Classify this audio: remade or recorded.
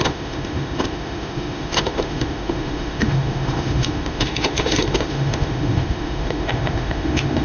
remade